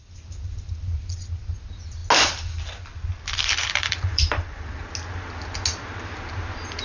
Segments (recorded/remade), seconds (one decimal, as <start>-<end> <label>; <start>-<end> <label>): 0.0-3.6 recorded; 3.6-4.7 remade; 4.7-6.8 recorded